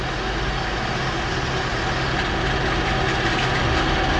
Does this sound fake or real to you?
real